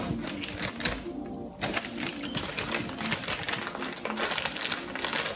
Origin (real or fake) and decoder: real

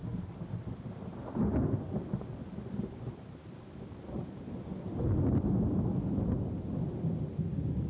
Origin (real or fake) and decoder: real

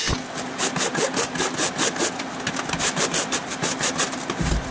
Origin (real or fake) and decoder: real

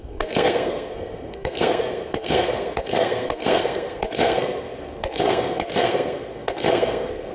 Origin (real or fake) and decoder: fake, codec, SNAC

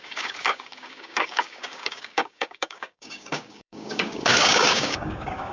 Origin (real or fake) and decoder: fake, codec, DAC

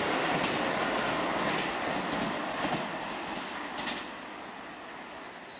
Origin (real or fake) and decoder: real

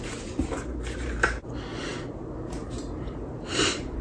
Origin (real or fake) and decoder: fake, vocoder, BigVGAN v2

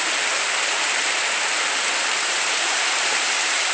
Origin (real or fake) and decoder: fake, vocoder, BigVGAN v2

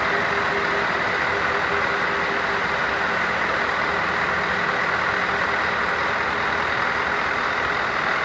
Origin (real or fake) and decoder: real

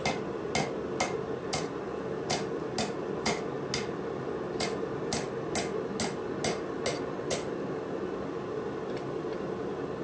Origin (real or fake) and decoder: real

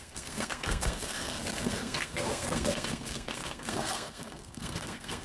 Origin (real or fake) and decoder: fake, codec, SNAC